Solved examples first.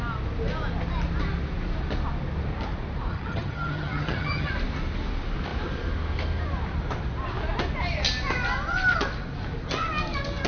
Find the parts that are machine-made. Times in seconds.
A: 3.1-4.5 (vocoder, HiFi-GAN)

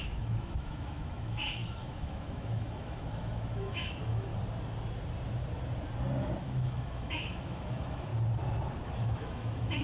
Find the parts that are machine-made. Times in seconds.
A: 0.0-4.3 (autoencoder, DAC-VAE); 6.4-8.1; 8.8-9.8

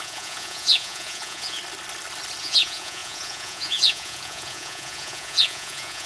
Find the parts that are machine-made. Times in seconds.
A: 0.0-1.6 (vocoder, Vocos); 2.4-6.1

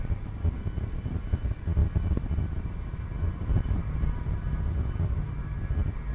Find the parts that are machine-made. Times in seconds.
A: none

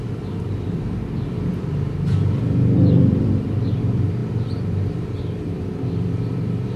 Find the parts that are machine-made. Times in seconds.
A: 0.0-6.8 (vocoder, BigVGAN v2)

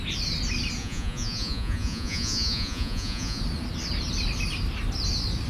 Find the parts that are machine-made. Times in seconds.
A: 0.8-3.4 (vocoder, Vocos)

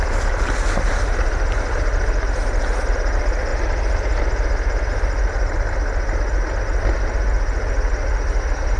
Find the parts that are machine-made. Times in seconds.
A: none

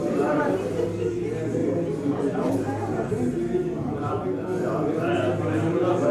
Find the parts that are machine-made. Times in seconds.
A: none